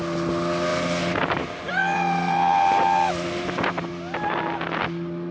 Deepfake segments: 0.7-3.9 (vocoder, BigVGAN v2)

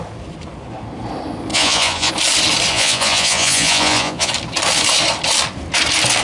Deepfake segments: 1.5-2.1 (vocoder, Vocos); 2.7-4.3

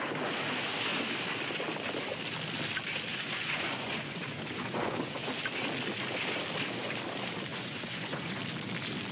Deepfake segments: 3.1-5.3 (vocoder, Vocos); 7.5-8.4